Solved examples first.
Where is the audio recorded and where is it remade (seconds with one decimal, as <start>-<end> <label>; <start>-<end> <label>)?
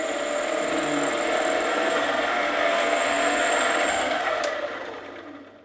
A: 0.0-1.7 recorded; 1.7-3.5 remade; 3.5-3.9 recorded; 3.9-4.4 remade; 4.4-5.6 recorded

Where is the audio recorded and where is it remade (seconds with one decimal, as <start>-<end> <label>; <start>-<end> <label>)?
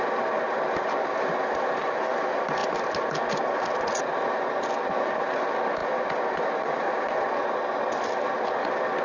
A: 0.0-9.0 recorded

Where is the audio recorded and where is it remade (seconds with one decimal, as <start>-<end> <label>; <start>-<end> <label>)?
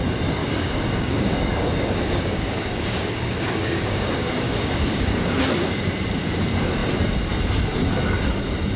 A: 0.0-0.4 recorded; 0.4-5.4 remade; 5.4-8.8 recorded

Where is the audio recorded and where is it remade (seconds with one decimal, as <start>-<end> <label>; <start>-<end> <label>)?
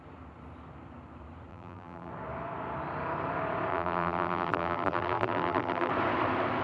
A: 0.0-1.5 recorded; 1.5-2.1 remade; 2.1-3.7 recorded; 3.7-5.9 remade; 5.9-6.6 recorded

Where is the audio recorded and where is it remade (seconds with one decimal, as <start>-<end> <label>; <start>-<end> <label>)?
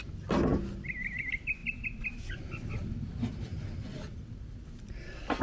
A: 0.0-5.4 recorded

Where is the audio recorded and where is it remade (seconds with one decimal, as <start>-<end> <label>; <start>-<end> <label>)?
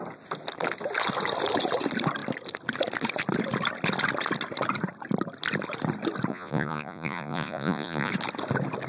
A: 0.0-6.3 recorded; 6.3-8.1 remade; 8.1-8.9 recorded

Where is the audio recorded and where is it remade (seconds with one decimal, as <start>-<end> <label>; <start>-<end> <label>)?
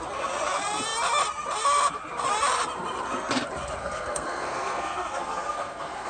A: 0.0-3.8 recorded; 3.8-6.1 remade